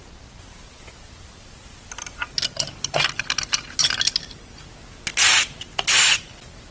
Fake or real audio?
real